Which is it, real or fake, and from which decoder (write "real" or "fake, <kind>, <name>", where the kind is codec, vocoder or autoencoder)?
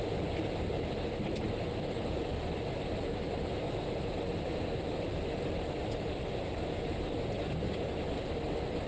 real